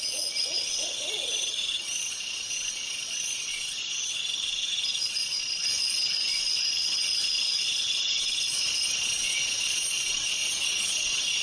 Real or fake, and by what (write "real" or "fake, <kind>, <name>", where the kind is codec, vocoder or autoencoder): fake, vocoder, Vocos